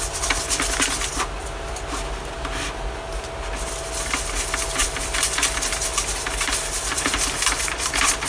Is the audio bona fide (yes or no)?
yes